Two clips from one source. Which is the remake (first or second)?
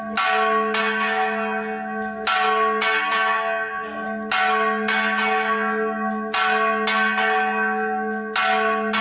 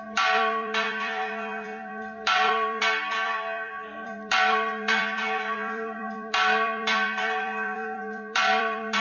second